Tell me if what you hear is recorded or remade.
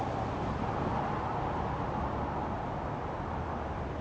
recorded